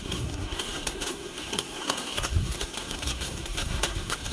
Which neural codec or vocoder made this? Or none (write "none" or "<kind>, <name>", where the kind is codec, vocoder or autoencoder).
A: codec, SNAC